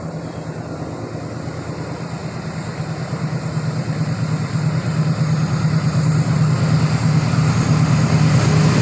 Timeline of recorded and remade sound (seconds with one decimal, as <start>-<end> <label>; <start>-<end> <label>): 0.0-8.8 recorded